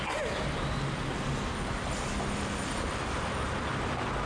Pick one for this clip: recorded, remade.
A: recorded